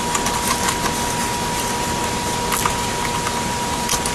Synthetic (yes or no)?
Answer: no